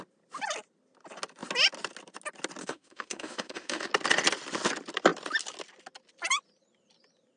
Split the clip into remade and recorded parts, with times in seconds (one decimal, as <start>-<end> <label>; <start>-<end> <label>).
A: 0.0-2.6 recorded; 2.6-3.9 remade; 3.9-7.4 recorded